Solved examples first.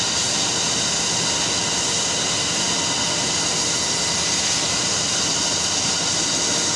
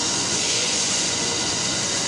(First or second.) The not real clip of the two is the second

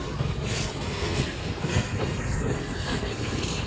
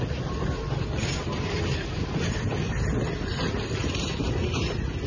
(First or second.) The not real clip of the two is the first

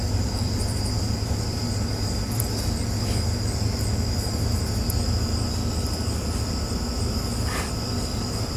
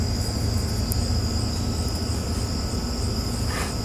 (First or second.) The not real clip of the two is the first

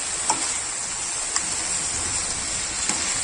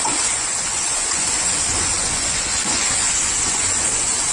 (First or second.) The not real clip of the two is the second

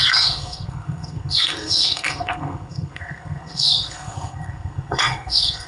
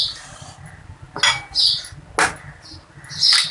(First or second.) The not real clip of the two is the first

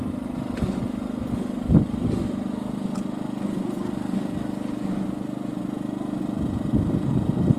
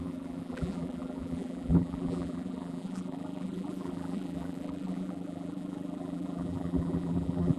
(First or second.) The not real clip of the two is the second